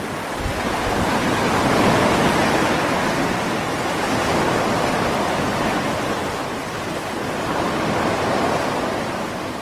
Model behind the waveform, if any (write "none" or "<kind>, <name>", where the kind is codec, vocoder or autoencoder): none